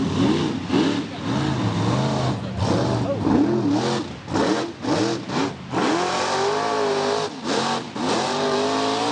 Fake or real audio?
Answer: real